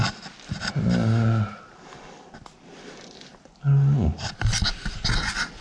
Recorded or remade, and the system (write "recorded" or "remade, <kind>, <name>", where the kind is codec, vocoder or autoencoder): recorded